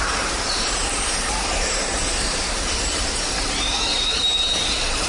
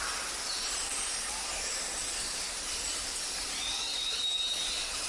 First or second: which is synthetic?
first